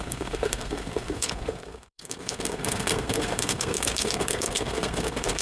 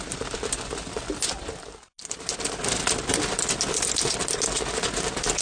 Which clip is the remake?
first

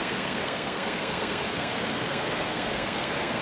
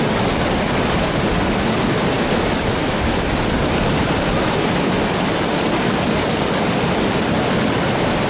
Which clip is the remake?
first